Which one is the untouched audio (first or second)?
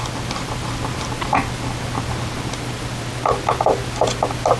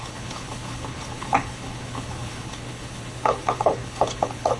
first